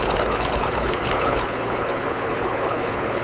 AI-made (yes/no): yes